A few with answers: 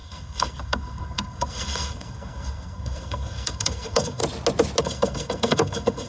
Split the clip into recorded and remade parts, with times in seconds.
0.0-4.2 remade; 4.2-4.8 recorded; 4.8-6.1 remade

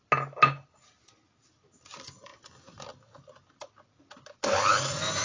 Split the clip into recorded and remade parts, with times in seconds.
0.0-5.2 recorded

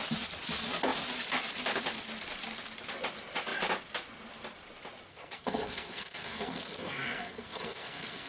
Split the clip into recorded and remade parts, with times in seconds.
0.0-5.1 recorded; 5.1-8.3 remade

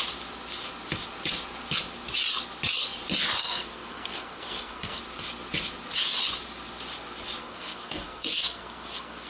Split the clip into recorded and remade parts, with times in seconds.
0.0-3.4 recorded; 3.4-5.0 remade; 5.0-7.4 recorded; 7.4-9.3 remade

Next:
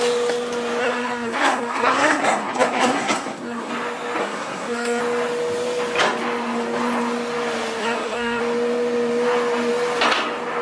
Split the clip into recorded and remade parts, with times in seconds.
0.0-0.8 recorded; 0.8-3.7 remade; 3.7-4.2 recorded; 4.2-5.0 remade; 5.0-7.8 recorded; 7.8-8.4 remade; 8.4-10.6 recorded

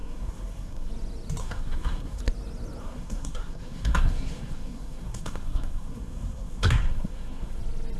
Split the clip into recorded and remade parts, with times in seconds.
0.0-0.9 remade; 0.9-1.4 recorded; 1.4-2.2 remade; 2.2-2.8 recorded; 2.8-7.6 remade; 7.6-8.0 recorded

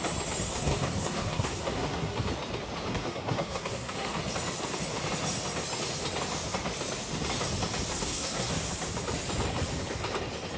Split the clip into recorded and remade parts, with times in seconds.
0.0-0.5 recorded; 0.5-2.3 remade; 2.3-2.9 recorded; 2.9-4.2 remade; 4.2-7.9 recorded; 7.9-8.5 remade; 8.5-10.6 recorded